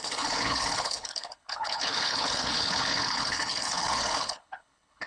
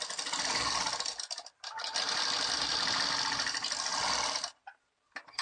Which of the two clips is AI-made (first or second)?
first